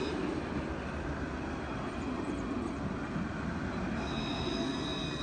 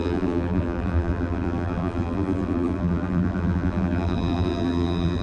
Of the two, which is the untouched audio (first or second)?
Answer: first